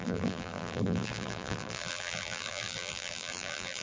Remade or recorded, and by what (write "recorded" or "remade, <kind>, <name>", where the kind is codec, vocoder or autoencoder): remade, vocoder, BigVGAN v2